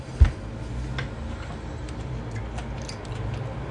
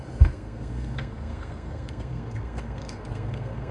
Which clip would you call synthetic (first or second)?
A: second